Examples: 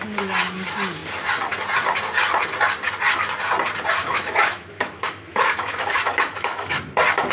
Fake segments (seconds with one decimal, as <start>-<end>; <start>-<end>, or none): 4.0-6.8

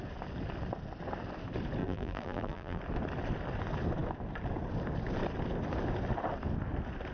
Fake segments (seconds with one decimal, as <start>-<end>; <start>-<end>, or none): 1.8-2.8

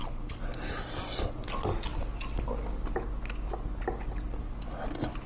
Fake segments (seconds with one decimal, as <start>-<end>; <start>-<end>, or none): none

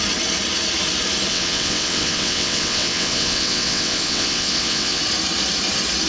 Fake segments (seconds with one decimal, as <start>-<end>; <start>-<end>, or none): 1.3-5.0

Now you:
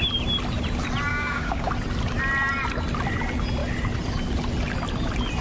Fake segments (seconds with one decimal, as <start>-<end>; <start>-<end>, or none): 1.1-1.7

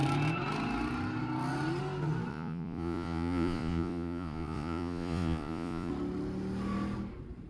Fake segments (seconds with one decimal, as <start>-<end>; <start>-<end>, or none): 2.3-5.9